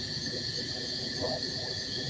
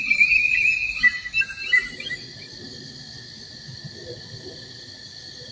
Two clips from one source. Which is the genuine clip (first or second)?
second